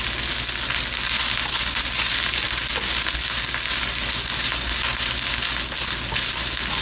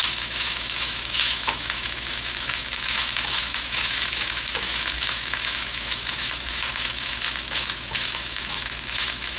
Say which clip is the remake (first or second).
second